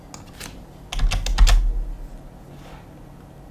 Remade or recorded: recorded